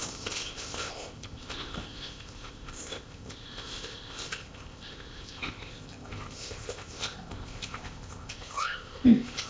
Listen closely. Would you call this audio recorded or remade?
remade